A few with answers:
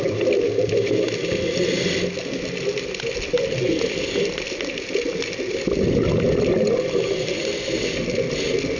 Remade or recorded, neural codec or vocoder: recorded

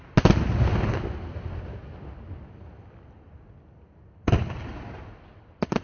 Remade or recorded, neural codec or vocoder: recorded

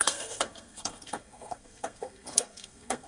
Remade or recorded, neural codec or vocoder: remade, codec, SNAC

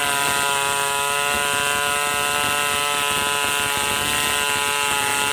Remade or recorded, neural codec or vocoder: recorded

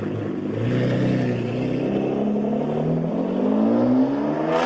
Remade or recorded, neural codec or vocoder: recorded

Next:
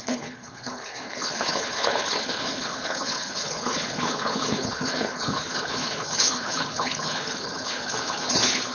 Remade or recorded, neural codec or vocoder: remade, codec, HILCodec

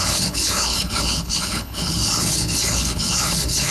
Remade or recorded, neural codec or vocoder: remade, codec, HILCodec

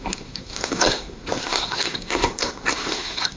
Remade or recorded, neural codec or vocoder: remade, codec, SNAC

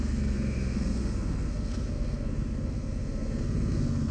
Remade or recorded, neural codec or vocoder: remade, codec, SNAC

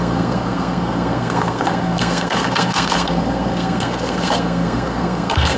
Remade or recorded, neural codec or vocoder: remade, codec, SNAC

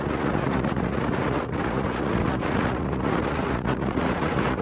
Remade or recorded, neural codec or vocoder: remade, vocoder, Vocos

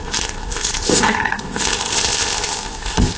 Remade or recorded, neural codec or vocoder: remade, codec, ZipCodec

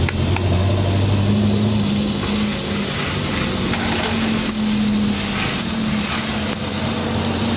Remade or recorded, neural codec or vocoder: recorded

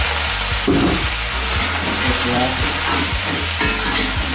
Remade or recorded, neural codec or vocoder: recorded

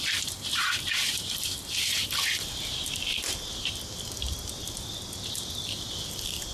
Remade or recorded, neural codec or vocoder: recorded